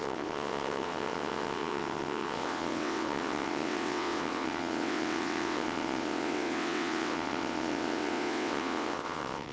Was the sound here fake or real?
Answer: fake